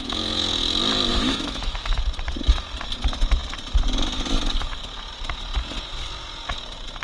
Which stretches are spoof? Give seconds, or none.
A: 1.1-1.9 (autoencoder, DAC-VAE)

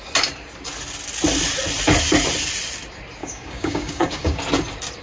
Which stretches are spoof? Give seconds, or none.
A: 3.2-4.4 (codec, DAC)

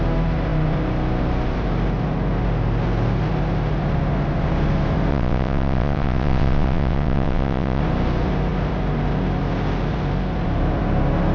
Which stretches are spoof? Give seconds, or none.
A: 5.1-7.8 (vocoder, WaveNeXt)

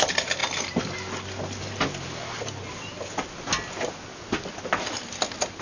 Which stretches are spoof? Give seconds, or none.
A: none

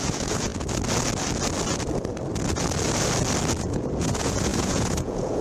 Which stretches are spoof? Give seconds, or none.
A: 0.0-0.5 (vocoder, Vocos); 3.7-5.4

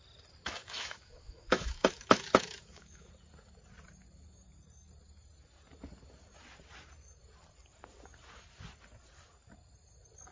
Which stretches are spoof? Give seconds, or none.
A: 0.6-3.1 (autoencoder, DAC-VAE)

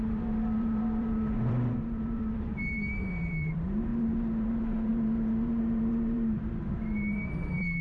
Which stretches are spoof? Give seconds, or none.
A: 0.0-7.8 (vocoder, BigVGAN v2)

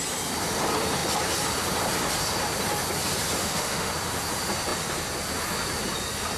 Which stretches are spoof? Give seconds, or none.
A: 3.4-3.9 (autoencoder, DAC-VAE)